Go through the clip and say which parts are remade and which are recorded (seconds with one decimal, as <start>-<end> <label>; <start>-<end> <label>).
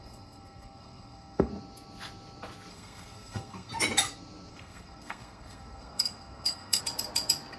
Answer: 0.0-1.5 remade; 1.5-2.7 recorded; 2.7-3.7 remade; 3.7-4.5 recorded; 4.5-6.8 remade; 6.8-7.6 recorded